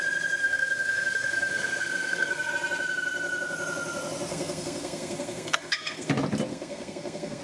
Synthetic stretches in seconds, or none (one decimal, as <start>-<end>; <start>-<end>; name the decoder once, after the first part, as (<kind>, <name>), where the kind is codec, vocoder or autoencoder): 0.4-2.5 (codec, SNAC); 4.3-6.1; 6.5-7.4